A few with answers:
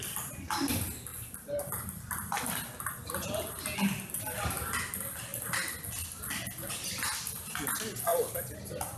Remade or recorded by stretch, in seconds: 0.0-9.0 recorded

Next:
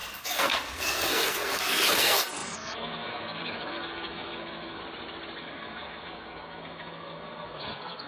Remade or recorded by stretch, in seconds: 0.0-4.8 remade; 4.8-5.4 recorded; 5.4-8.1 remade

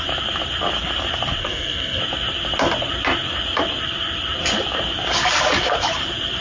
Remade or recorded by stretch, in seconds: 0.0-1.4 recorded; 1.4-2.0 remade; 2.0-6.4 recorded

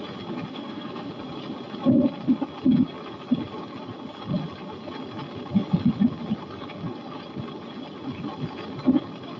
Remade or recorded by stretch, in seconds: 0.0-0.5 recorded; 0.5-1.1 remade; 1.1-9.4 recorded

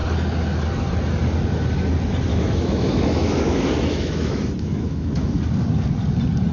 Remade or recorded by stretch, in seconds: 0.0-2.3 recorded; 2.3-5.4 remade; 5.4-6.5 recorded

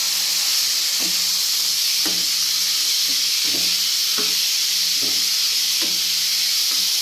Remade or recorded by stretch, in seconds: 0.0-7.0 recorded